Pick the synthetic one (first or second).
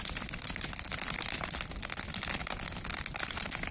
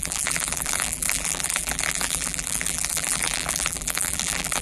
second